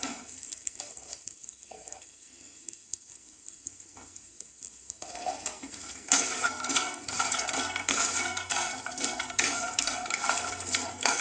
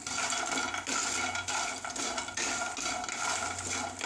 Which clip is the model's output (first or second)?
first